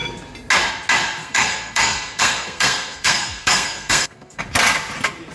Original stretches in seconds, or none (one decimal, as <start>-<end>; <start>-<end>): 0.0-1.2; 4.4-5.3